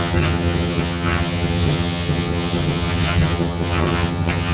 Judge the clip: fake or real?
fake